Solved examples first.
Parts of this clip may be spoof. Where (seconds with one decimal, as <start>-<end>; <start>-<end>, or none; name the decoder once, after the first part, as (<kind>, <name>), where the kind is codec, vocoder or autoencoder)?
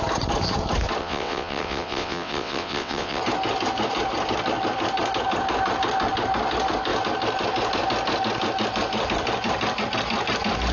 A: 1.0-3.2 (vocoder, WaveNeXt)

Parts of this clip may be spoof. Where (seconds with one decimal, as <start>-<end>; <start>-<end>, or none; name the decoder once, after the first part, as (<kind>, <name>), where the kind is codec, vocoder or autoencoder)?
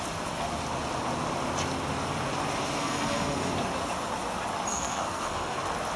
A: 2.8-3.5 (codec, SNAC); 4.7-5.6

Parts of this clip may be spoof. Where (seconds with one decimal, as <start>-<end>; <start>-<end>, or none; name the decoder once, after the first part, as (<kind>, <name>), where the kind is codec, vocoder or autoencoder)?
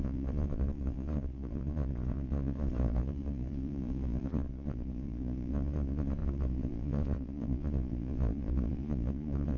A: 0.0-9.6 (vocoder, Vocos)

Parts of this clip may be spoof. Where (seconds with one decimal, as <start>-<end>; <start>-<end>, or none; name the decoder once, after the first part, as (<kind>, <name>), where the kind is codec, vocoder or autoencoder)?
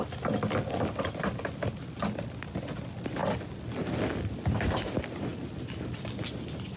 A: none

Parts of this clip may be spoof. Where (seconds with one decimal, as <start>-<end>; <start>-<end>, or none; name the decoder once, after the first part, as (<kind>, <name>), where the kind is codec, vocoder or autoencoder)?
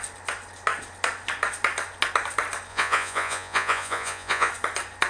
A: 2.7-4.5 (vocoder, Vocos)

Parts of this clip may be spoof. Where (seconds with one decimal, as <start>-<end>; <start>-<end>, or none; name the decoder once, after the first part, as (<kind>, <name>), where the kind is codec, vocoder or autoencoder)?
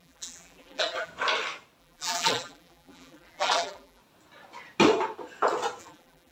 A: 0.0-1.1 (vocoder, BigVGAN v2); 1.8-4.0; 5.8-6.3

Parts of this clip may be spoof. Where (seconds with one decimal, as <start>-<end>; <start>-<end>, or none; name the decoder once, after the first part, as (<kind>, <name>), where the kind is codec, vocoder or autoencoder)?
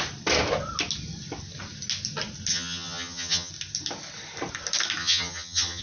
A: 2.5-3.5 (vocoder, HiFi-GAN); 5.0-5.8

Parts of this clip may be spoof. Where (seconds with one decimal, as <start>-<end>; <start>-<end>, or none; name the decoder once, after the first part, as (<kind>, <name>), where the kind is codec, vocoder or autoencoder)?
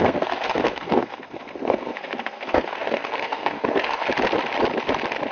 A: 0.0-4.0 (codec, SNAC)